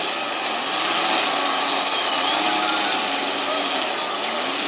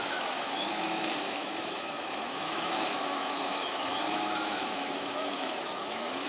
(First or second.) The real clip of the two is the first